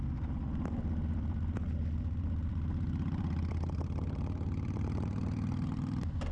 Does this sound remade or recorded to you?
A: remade